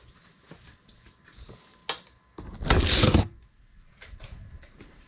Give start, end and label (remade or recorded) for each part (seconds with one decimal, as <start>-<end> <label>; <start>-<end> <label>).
0.0-1.8 remade; 1.8-3.2 recorded; 3.2-5.1 remade